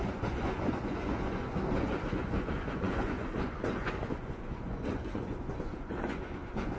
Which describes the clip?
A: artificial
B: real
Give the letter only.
A